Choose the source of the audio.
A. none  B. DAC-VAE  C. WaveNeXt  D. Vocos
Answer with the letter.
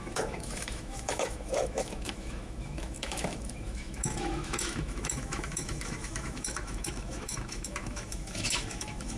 B